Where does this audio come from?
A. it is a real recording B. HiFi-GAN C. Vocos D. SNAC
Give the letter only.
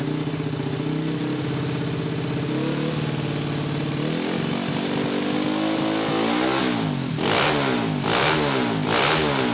A